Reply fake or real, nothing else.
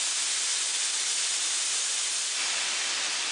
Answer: real